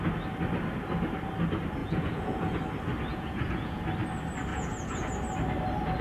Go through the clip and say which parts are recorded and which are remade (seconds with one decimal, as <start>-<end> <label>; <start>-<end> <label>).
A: 0.0-1.8 recorded; 1.8-2.6 remade; 2.6-3.1 recorded; 3.1-3.8 remade; 3.8-4.5 recorded; 4.5-5.1 remade; 5.1-6.0 recorded